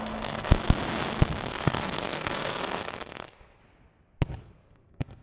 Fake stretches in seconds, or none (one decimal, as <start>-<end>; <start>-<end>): 0.0-0.6; 1.5-3.6; 4.4-5.2

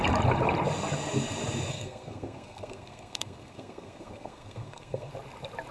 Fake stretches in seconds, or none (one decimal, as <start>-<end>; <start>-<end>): 1.7-5.1